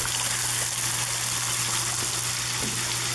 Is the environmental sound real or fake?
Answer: real